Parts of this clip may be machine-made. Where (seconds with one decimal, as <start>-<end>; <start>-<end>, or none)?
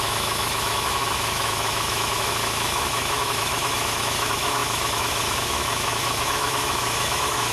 0.0-7.5